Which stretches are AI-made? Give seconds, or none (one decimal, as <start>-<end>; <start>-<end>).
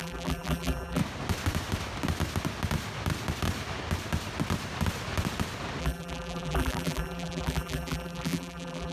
0.0-1.0; 5.8-8.9